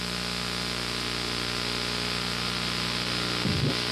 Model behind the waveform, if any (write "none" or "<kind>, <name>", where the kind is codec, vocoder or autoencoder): none